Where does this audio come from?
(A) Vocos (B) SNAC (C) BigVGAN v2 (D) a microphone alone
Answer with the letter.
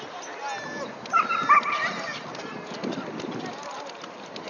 D